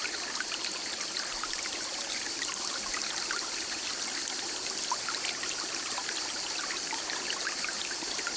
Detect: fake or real real